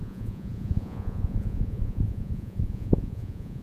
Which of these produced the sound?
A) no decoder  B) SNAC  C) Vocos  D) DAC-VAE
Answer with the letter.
C